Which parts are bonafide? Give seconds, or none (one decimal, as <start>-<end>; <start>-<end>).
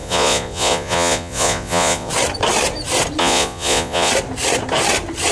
2.1-3.2; 4.1-5.3